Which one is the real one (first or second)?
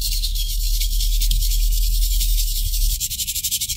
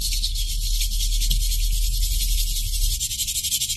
second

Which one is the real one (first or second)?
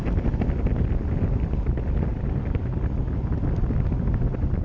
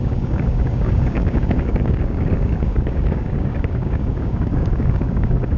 first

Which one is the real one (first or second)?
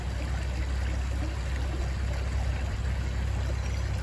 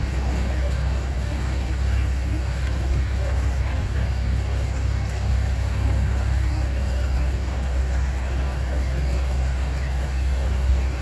first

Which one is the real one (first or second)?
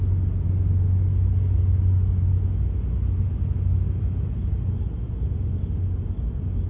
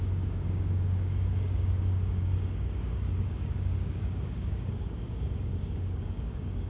first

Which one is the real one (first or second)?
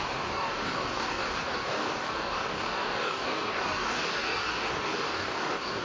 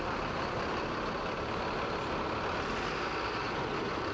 second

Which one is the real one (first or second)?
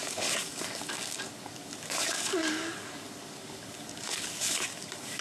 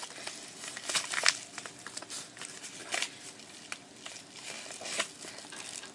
second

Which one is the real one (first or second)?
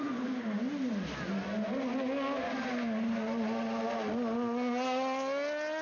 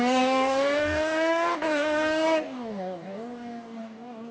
first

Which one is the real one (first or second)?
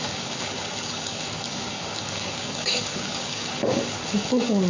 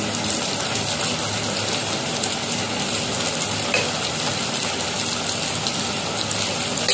second